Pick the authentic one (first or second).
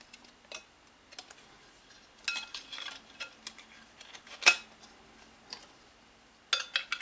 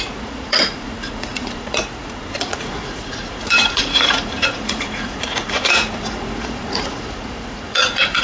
first